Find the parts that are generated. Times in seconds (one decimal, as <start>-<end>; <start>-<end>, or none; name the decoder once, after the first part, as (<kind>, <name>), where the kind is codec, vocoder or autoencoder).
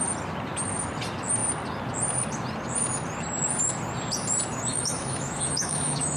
4.7-6.2 (autoencoder, DAC-VAE)